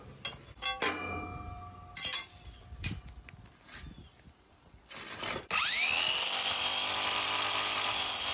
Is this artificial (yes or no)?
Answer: no